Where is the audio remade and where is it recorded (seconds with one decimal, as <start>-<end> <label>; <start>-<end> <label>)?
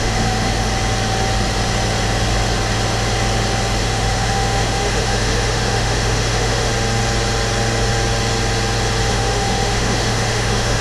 0.0-0.7 remade; 0.7-3.8 recorded; 3.8-6.7 remade; 6.7-9.1 recorded; 9.1-10.8 remade